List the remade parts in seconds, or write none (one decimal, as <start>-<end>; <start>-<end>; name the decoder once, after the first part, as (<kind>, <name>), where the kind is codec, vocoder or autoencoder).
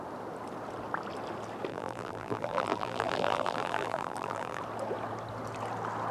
1.7-4.6 (vocoder, BigVGAN v2)